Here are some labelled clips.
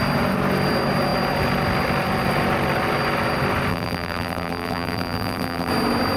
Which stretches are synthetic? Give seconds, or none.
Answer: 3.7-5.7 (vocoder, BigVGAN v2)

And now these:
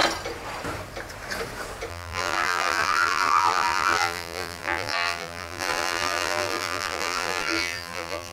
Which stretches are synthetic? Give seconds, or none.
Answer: 1.9-8.3 (vocoder, BigVGAN v2)

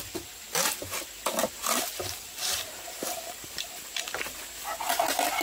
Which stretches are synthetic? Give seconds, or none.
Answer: 1.4-4.4 (vocoder, BigVGAN v2)

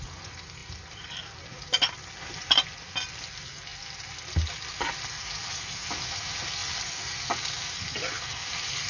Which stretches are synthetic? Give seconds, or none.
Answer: none

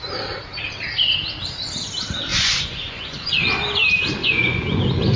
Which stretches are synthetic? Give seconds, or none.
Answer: 2.3-3.4 (vocoder, Vocos); 4.2-4.8

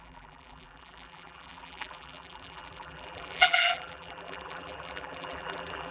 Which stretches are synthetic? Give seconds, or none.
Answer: 0.0-5.9 (vocoder, BigVGAN v2)